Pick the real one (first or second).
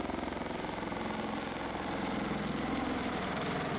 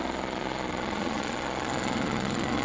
first